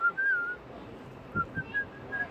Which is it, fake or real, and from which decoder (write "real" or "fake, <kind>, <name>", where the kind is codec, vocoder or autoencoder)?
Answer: real